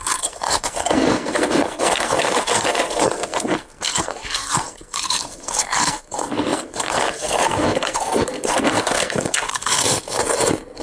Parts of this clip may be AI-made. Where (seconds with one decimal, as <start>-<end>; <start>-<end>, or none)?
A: 0.0-10.2